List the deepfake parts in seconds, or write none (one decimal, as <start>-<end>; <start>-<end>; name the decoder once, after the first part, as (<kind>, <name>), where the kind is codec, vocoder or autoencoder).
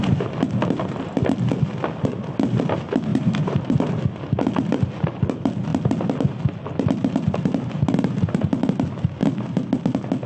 3.1-3.8 (vocoder, BigVGAN v2)